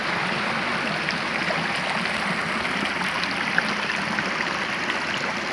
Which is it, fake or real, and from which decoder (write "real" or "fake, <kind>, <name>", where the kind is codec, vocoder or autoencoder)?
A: real